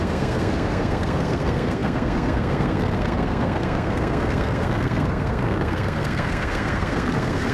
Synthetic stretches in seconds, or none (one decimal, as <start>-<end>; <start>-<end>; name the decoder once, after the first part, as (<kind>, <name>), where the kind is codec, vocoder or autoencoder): 0.0-7.5 (codec, SNAC)